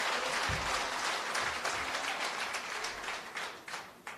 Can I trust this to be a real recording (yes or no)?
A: yes